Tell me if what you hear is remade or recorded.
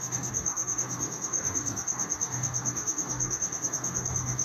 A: remade